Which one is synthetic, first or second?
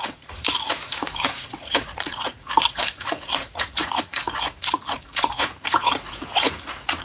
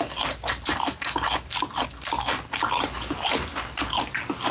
first